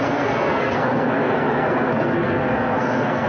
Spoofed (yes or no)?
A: yes